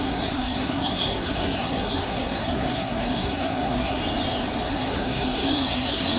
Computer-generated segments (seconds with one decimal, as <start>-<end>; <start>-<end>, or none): 0.0-4.0; 4.7-6.2